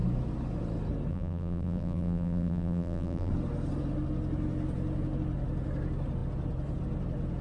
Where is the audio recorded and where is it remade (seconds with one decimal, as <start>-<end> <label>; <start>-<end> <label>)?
0.0-1.1 recorded; 1.1-3.3 remade; 3.3-7.4 recorded